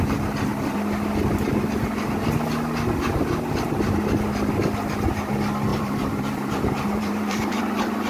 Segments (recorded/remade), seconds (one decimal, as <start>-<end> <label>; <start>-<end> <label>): 0.0-5.7 recorded; 5.7-7.6 remade; 7.6-8.1 recorded